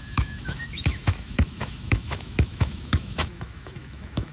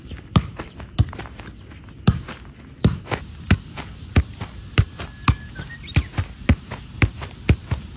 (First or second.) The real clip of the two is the second